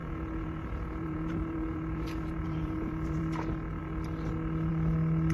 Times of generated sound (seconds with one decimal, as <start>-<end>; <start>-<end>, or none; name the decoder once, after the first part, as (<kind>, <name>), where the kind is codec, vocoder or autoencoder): 0.0-3.2 (vocoder, Vocos)